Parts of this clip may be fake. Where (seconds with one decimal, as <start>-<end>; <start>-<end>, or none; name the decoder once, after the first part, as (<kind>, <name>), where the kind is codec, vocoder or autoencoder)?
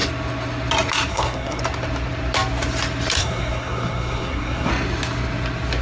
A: 1.1-1.6 (codec, SNAC); 3.2-4.7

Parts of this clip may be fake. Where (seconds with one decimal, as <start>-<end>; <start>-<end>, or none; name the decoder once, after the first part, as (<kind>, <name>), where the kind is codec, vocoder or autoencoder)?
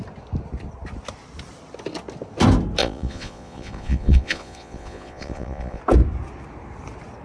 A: 2.8-5.8 (vocoder, Vocos)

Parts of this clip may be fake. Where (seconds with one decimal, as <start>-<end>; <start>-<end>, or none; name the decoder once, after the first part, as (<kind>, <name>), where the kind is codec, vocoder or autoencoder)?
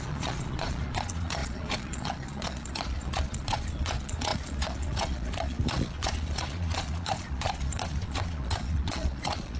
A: 0.0-9.6 (vocoder, Vocos)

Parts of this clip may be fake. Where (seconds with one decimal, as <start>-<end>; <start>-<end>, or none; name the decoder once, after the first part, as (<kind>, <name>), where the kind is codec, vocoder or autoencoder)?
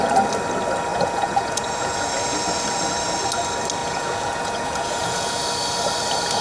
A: 0.9-2.1 (vocoder, Vocos); 3.8-5.4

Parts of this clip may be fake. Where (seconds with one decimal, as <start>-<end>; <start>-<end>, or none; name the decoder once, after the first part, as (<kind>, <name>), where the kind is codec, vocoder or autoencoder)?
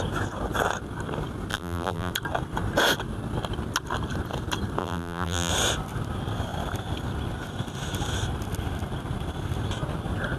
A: 1.5-2.1 (vocoder, BigVGAN v2); 4.8-5.5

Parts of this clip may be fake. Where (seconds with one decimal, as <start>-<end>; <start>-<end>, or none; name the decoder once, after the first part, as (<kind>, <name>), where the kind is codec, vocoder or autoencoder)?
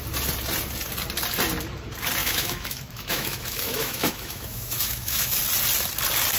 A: 2.2-5.4 (autoencoder, DAC-VAE)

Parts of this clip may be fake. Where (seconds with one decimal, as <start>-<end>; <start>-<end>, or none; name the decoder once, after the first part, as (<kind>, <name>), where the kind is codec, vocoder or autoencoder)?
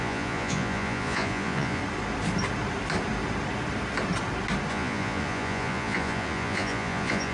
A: 0.0-1.8 (vocoder, Vocos); 4.7-7.3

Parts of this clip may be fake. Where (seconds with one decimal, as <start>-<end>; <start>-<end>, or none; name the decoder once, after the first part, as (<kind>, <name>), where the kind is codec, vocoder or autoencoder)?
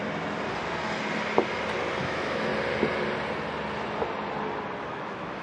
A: 2.0-2.5 (autoencoder, DAC-VAE); 4.9-5.4